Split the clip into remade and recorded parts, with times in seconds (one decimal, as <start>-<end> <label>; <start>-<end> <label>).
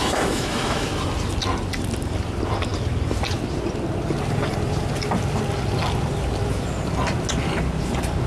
0.0-0.9 remade; 0.9-8.3 recorded